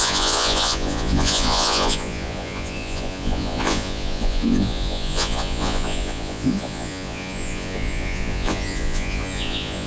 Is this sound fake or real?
fake